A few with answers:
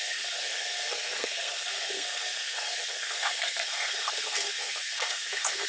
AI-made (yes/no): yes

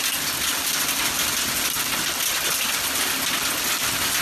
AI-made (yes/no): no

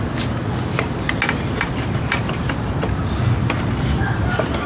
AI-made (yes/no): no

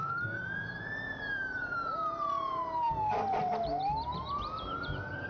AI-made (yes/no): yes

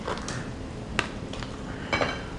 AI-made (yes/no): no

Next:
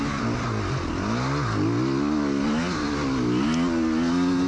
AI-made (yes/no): no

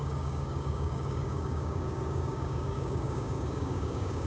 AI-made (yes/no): yes